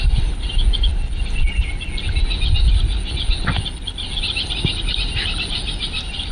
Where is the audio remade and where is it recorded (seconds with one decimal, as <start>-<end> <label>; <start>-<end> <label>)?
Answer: 0.0-6.3 recorded